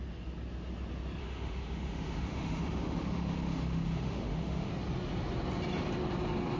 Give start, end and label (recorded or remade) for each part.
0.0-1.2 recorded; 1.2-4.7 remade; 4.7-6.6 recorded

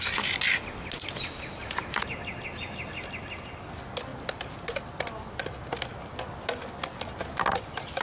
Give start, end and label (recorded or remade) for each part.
0.0-4.1 recorded; 4.1-4.8 remade; 4.8-8.0 recorded

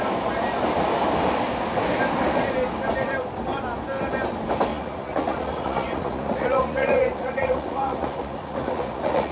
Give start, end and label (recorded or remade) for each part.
0.0-4.7 recorded; 4.7-9.3 remade

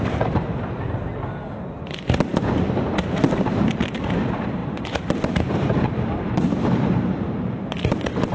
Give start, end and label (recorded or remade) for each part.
0.0-4.6 recorded; 4.6-8.3 remade

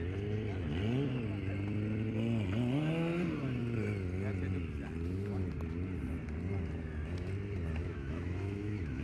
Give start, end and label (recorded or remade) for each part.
0.0-7.8 recorded; 7.8-9.0 remade